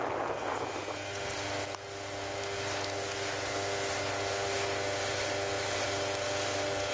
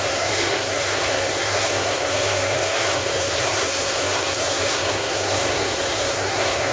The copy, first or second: second